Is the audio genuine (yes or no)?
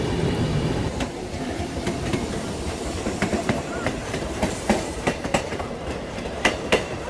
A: no